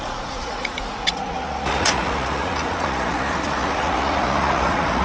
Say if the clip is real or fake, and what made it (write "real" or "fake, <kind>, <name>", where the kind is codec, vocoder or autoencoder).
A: fake, vocoder, Vocos